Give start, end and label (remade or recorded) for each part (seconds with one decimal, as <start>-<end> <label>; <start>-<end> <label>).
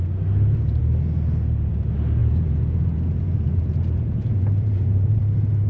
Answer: 0.0-2.2 recorded; 2.2-5.2 remade; 5.2-5.7 recorded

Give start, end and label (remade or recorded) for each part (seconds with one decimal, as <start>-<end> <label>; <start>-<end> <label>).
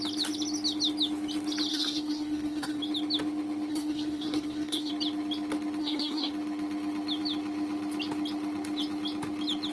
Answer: 0.0-1.7 recorded; 1.7-2.8 remade; 2.8-3.7 recorded; 3.7-4.9 remade; 4.9-5.8 recorded; 5.8-6.3 remade; 6.3-9.7 recorded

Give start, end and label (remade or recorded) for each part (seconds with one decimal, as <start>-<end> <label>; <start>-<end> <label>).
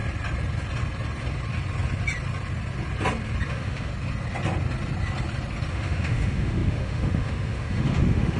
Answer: 0.0-3.5 recorded; 3.5-3.9 remade; 3.9-5.7 recorded; 5.7-8.4 remade